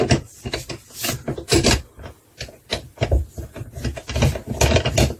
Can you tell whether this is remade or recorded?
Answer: recorded